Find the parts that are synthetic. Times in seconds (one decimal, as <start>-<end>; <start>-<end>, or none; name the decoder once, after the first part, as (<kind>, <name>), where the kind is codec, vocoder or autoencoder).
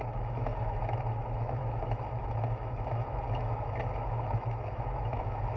0.0-5.6 (autoencoder, DAC-VAE)